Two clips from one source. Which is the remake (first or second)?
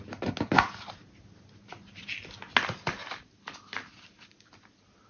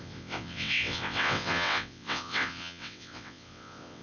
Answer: second